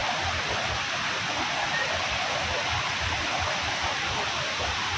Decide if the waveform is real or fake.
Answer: fake